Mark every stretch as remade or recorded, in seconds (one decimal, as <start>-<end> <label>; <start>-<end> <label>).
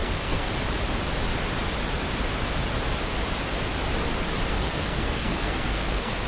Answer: 0.0-0.5 remade; 0.5-4.5 recorded; 4.5-6.3 remade